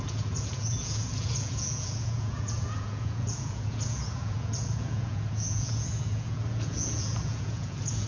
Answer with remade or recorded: remade